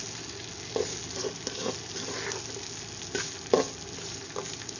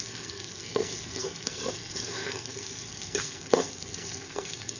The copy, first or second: second